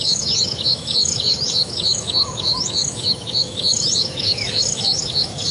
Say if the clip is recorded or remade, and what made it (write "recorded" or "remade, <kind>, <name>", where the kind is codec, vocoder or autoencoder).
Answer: remade, autoencoder, DAC-VAE